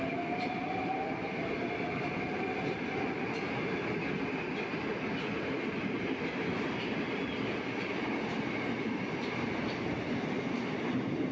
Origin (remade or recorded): recorded